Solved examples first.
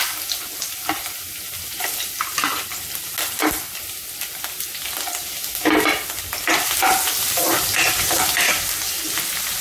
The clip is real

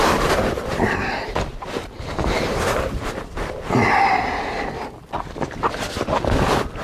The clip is fake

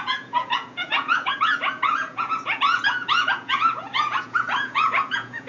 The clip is fake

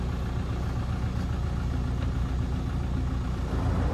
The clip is real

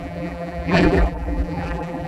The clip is fake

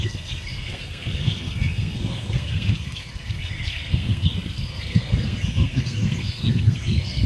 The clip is fake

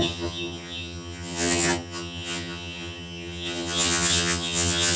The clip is fake